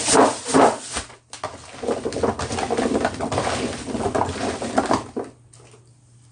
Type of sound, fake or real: real